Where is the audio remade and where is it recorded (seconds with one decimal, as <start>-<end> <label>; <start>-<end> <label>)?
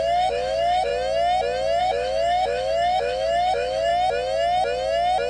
0.0-0.9 remade; 0.9-1.8 recorded; 1.8-3.9 remade; 3.9-5.3 recorded